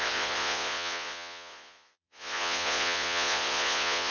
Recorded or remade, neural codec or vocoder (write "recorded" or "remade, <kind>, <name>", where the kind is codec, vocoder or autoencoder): remade, vocoder, Vocos